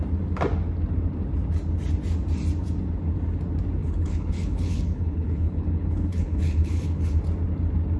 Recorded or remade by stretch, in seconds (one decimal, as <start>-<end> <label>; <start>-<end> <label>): 0.0-3.8 recorded; 3.8-7.2 remade; 7.2-8.0 recorded

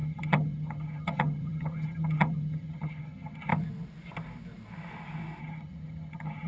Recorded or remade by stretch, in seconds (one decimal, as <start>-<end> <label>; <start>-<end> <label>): 0.0-3.5 remade; 3.5-5.4 recorded; 5.4-6.5 remade

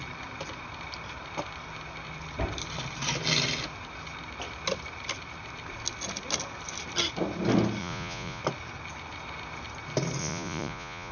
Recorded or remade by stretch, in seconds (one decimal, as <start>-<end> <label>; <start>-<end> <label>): 0.0-7.8 recorded; 7.8-8.4 remade; 8.4-10.2 recorded; 10.2-11.1 remade